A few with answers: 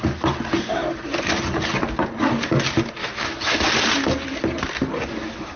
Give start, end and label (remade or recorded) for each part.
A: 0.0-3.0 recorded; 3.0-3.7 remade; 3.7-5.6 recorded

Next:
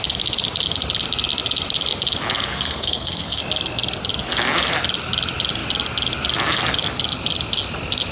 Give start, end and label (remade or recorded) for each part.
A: 0.0-2.5 recorded; 2.5-3.4 remade; 3.4-8.1 recorded

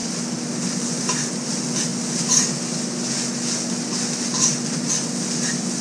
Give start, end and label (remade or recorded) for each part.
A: 0.0-5.8 recorded

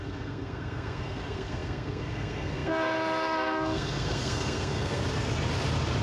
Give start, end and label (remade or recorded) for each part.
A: 0.0-5.0 remade; 5.0-6.0 recorded

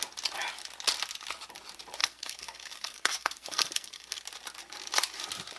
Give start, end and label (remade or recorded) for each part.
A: 0.0-2.0 recorded; 2.0-4.2 remade; 4.2-5.6 recorded

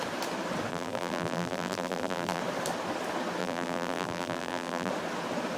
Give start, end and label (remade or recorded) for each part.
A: 0.0-0.7 recorded; 0.7-2.4 remade; 2.4-3.4 recorded; 3.4-4.9 remade; 4.9-5.6 recorded